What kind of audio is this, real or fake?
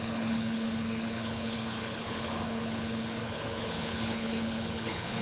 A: fake